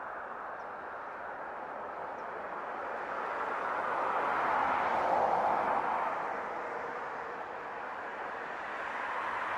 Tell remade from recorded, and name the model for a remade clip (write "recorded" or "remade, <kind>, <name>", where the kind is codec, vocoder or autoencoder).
recorded